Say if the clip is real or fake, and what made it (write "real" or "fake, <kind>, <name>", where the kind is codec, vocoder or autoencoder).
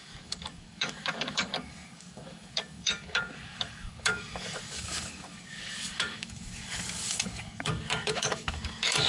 fake, codec, DAC